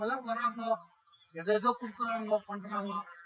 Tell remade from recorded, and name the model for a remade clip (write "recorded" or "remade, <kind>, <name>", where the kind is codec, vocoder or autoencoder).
remade, vocoder, BigVGAN v2